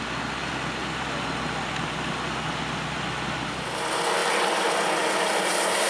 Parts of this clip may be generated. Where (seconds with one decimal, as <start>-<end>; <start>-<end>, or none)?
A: none